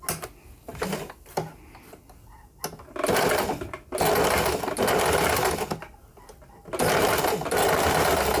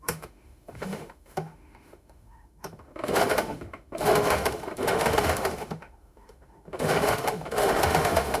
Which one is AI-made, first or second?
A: second